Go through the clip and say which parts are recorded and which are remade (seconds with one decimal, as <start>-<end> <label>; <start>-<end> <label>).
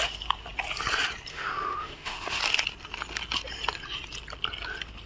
0.0-1.3 recorded; 1.3-2.4 remade; 2.4-5.1 recorded